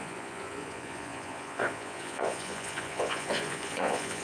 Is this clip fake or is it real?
fake